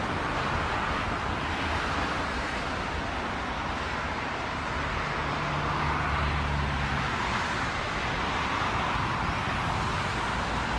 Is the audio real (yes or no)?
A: yes